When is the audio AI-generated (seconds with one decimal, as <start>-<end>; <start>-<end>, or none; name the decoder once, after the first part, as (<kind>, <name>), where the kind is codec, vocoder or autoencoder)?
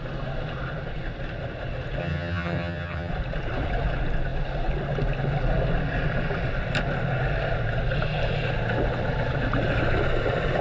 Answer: 2.0-3.1 (vocoder, HiFi-GAN)